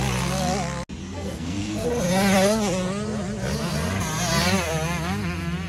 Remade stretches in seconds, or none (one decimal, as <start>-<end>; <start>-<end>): 1.0-1.9